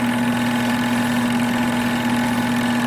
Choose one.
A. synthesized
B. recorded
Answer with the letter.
B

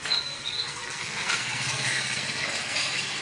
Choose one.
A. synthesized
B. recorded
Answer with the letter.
A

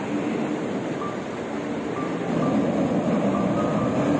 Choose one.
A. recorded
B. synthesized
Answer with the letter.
A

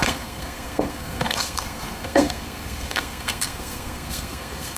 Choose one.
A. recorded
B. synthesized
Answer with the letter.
B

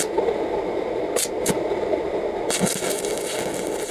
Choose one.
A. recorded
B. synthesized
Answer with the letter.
A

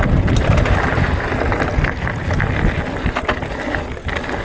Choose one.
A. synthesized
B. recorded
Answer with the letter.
B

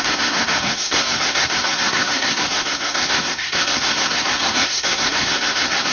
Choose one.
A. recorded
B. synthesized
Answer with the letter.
B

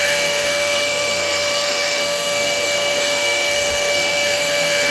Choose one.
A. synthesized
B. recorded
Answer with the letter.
A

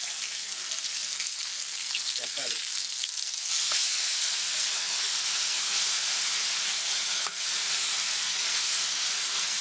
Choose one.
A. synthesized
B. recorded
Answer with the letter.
A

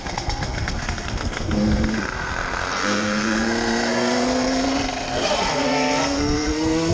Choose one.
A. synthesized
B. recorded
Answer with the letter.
A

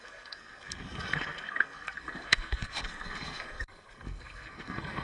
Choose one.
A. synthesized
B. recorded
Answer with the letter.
A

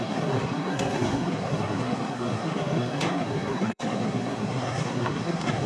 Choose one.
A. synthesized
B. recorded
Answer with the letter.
A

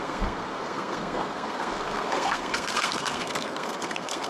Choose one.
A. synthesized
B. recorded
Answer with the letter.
A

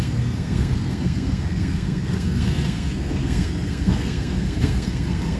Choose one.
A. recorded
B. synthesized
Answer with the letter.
B